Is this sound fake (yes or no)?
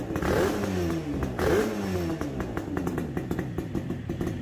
no